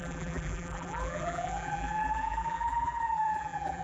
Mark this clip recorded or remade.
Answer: remade